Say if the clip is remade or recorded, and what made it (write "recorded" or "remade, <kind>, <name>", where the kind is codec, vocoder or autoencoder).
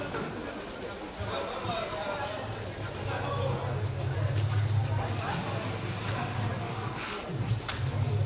recorded